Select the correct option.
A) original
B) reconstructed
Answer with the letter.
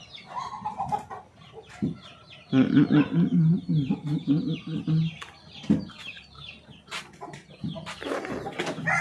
A